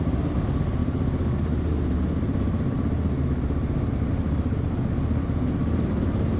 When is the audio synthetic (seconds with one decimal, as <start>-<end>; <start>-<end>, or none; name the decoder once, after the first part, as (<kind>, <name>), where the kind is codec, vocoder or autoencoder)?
none